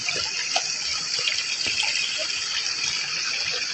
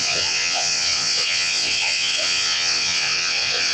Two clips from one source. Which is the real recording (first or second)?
first